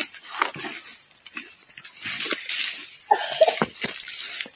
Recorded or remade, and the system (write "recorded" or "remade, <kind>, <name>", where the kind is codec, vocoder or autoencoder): recorded